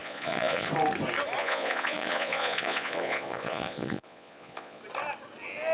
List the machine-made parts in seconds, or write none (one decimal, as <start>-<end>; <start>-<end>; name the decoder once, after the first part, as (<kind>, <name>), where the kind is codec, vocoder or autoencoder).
0.0-0.7 (vocoder, Vocos); 1.4-4.8

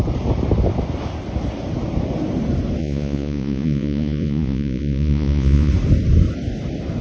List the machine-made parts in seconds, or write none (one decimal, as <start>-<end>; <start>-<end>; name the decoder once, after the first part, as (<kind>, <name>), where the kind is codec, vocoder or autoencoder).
2.8-5.7 (vocoder, Vocos)

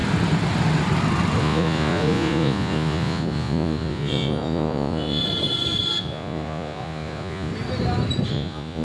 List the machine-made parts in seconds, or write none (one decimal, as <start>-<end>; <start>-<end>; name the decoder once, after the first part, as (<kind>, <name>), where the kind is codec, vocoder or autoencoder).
1.4-5.2 (vocoder, Vocos); 6.0-7.5; 8.3-8.8

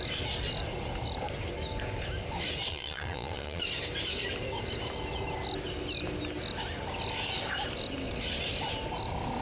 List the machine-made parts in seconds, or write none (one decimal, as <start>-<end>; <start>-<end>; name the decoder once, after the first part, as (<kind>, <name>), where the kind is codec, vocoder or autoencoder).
2.7-3.6 (vocoder, Vocos)

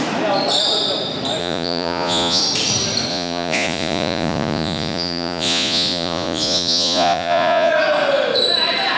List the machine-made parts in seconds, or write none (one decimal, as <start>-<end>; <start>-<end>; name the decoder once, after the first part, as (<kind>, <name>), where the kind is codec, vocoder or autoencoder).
1.4-2.4 (vocoder, Vocos); 3.1-7.7